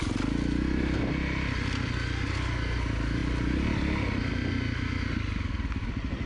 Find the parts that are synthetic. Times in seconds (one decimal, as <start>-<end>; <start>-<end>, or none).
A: none